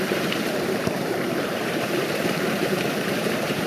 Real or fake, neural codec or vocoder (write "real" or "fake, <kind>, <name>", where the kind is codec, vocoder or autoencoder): fake, vocoder, BigVGAN v2